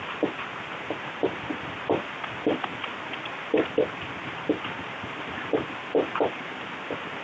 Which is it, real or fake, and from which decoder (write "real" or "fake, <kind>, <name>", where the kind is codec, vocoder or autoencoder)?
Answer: real